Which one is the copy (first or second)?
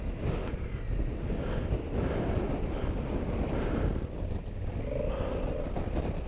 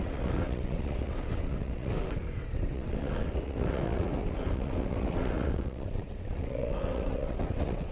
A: second